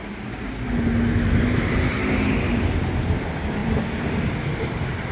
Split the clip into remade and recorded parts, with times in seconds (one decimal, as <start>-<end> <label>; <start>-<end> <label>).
0.0-3.1 recorded; 3.1-5.1 remade